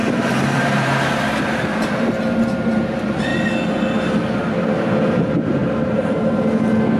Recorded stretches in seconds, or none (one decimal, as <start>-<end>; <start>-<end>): 3.3-4.8; 5.6-7.0